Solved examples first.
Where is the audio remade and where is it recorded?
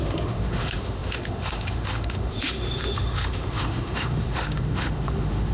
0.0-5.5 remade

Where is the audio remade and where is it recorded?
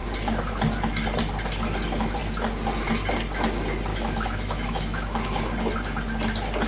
0.0-3.9 recorded; 3.9-5.4 remade; 5.4-6.7 recorded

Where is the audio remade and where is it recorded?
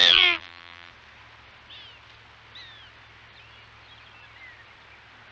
0.0-0.9 remade; 0.9-5.3 recorded